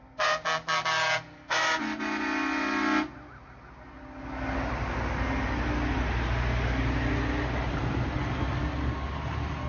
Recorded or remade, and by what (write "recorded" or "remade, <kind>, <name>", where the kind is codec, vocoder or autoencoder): recorded